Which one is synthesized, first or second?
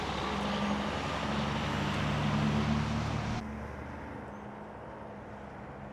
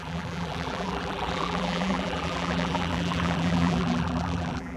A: second